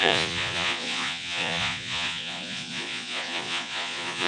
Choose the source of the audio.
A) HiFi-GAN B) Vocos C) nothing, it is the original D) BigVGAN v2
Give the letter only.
B